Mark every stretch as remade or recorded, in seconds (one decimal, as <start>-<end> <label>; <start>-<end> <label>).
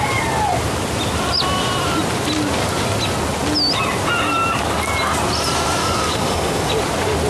0.0-5.8 recorded; 5.8-6.7 remade; 6.7-7.3 recorded